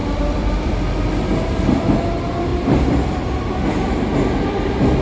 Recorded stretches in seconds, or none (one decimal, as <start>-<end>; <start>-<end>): 0.7-2.5; 4.0-5.0